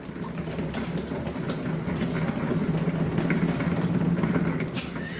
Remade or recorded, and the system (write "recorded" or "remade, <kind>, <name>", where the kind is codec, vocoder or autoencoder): recorded